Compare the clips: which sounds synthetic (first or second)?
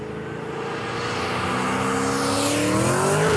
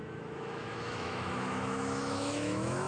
second